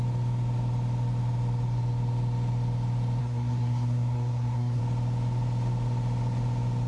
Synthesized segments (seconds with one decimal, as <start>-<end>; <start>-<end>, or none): 3.2-4.8